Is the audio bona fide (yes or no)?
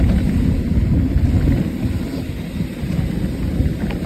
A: yes